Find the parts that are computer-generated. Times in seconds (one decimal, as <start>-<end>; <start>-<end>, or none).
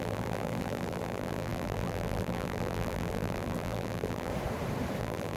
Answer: 0.0-4.3; 5.0-5.4